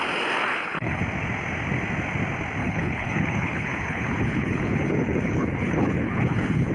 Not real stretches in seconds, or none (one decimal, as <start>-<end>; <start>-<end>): 0.5-1.0; 2.6-6.7